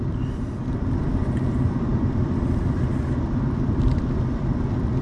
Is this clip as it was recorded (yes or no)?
no